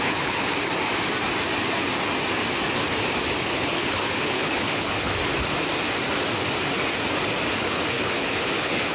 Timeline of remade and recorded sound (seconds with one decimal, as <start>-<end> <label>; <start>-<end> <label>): 0.0-0.5 remade; 0.5-3.4 recorded; 3.4-5.2 remade; 5.2-7.7 recorded; 7.7-8.9 remade